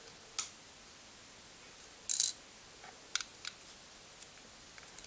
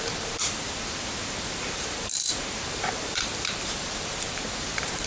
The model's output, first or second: second